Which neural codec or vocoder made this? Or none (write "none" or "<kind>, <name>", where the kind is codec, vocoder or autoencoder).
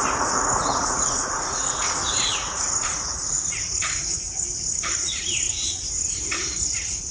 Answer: vocoder, Vocos